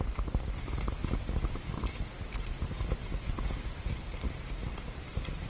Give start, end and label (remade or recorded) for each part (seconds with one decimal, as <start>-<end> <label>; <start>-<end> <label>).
0.0-1.0 recorded; 1.0-1.5 remade; 1.5-3.0 recorded; 3.0-4.0 remade; 4.0-5.5 recorded